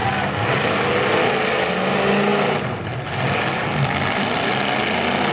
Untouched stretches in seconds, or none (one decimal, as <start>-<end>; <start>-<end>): 0.0-5.3